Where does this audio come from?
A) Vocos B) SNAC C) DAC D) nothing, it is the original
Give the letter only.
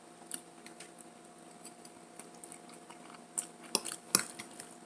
D